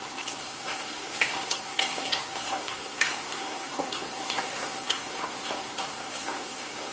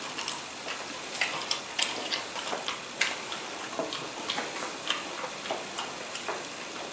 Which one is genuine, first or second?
second